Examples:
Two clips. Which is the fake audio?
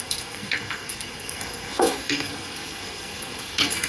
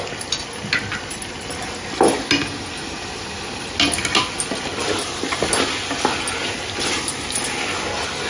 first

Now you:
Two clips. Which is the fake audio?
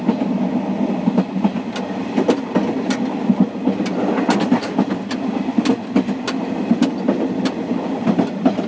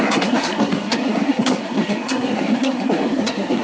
second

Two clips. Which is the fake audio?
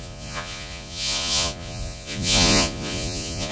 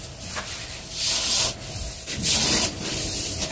first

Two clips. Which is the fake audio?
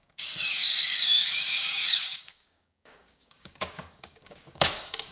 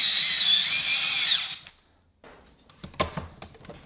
first